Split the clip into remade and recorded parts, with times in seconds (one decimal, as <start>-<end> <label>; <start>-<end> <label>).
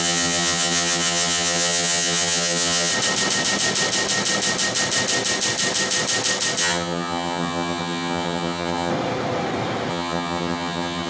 0.0-2.9 remade; 2.9-6.6 recorded; 6.6-8.9 remade; 8.9-9.9 recorded; 9.9-11.1 remade